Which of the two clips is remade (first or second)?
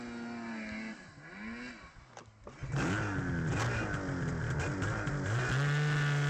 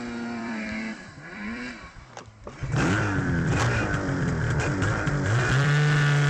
second